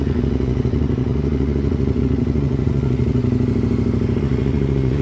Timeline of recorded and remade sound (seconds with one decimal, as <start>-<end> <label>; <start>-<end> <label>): 0.0-3.2 remade; 3.2-4.2 recorded; 4.2-5.0 remade